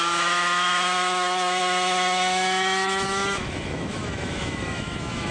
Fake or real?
fake